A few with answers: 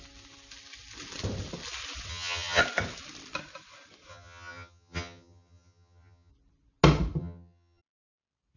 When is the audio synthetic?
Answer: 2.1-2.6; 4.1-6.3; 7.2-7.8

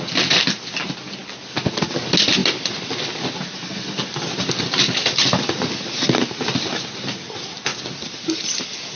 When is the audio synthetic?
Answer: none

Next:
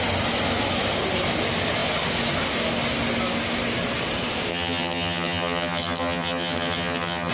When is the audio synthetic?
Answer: 4.5-7.3